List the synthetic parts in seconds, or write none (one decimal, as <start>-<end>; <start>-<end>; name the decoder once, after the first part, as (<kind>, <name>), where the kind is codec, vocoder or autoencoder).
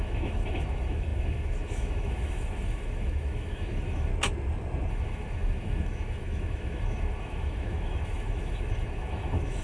0.0-4.1 (autoencoder, DAC-VAE); 4.9-9.6